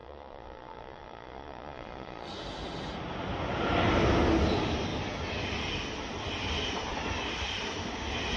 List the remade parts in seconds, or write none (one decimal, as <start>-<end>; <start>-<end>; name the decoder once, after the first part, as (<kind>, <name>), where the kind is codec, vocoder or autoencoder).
0.0-2.3 (vocoder, Vocos)